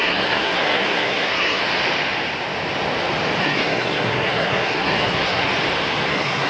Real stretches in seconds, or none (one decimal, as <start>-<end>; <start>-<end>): 1.6-3.4; 5.5-6.1